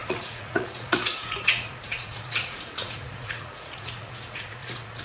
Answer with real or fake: fake